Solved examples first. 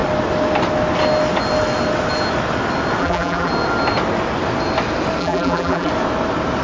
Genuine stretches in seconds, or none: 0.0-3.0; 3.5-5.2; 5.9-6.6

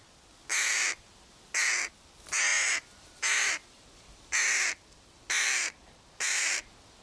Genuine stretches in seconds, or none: 0.0-2.5; 5.8-7.0

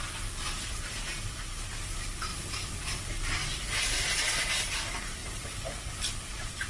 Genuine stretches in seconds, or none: 0.0-2.3; 3.1-5.2; 5.9-6.7